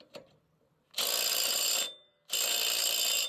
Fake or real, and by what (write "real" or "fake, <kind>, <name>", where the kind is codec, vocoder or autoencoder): real